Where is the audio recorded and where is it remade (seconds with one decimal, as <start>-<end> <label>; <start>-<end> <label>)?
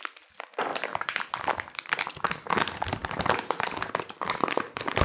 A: 0.0-0.7 recorded; 0.7-1.5 remade; 1.5-3.0 recorded; 3.0-5.0 remade